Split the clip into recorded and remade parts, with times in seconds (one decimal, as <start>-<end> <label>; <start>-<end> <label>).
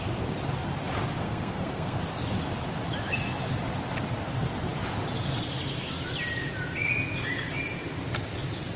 0.0-1.2 recorded; 1.2-2.0 remade; 2.0-8.8 recorded